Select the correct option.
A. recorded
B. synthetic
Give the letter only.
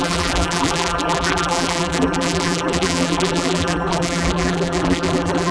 B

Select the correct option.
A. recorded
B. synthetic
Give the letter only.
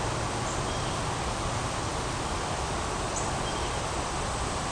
A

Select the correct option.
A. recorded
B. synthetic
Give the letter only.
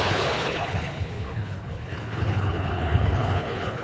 B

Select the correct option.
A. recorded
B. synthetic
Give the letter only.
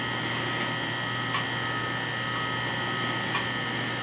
A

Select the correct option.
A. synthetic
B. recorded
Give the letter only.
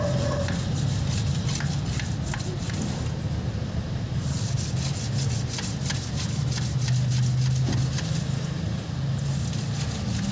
B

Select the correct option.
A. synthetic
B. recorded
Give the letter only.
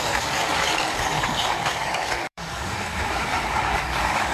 A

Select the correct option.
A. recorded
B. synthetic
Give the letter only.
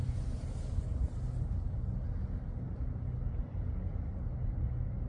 A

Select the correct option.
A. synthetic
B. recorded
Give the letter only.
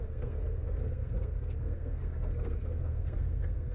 A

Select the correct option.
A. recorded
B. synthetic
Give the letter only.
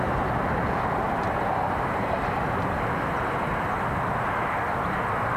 A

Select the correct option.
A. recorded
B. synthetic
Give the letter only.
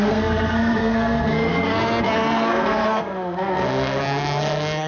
B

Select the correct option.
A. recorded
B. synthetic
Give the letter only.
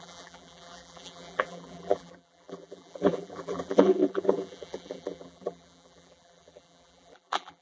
B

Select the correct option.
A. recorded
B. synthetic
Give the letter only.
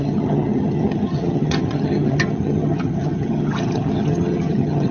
B